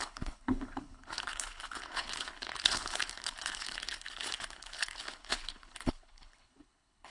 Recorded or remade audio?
remade